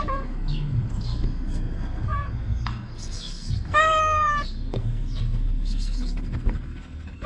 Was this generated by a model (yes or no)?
yes